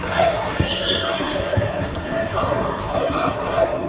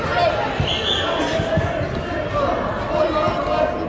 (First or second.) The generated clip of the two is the first